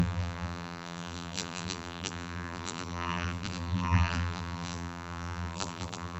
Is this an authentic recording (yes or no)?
no